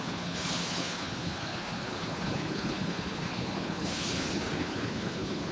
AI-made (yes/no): yes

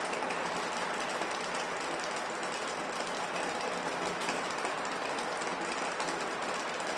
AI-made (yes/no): no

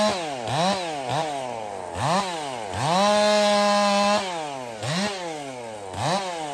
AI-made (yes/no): no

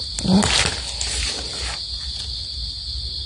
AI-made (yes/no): no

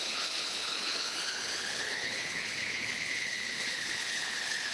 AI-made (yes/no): yes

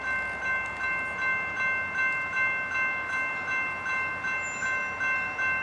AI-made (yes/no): no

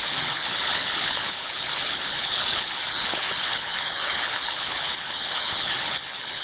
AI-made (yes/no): yes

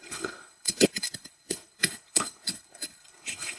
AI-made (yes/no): yes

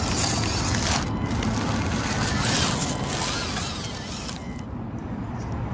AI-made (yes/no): no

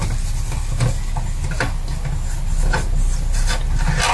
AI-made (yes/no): no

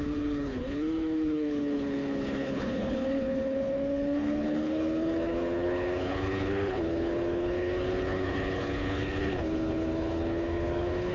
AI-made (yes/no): yes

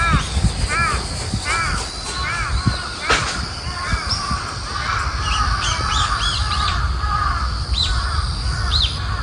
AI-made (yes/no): no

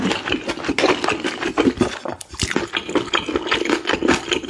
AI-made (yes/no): no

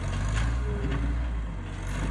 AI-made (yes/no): no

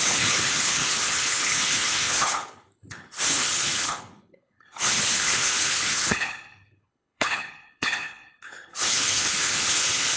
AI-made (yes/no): yes